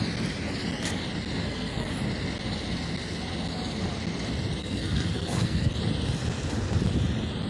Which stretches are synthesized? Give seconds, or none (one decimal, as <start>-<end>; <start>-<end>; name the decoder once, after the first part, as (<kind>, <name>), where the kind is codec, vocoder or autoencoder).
1.4-1.9 (codec, SNAC); 4.6-5.7